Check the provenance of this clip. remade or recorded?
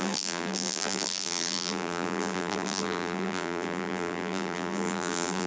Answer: remade